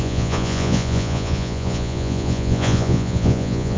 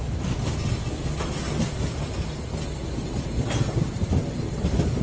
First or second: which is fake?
first